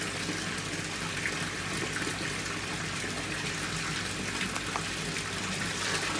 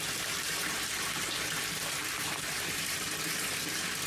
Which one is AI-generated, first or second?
second